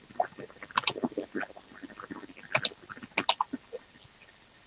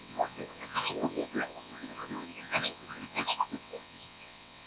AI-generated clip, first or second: second